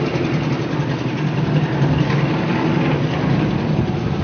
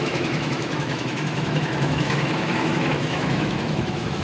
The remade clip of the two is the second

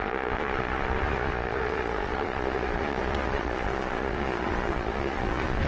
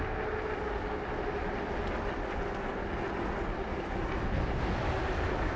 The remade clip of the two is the first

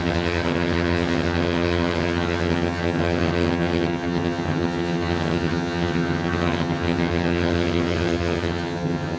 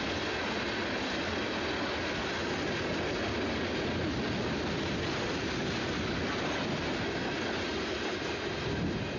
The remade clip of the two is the first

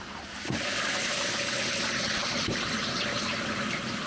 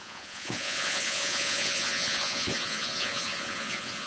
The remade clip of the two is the second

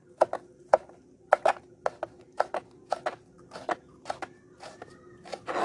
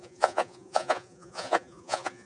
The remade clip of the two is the second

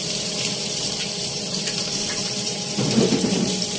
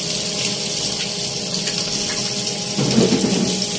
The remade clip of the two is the first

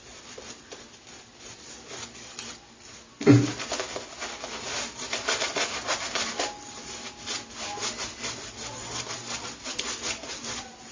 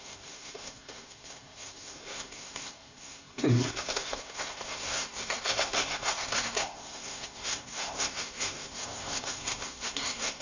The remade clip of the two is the second